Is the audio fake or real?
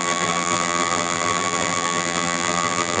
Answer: fake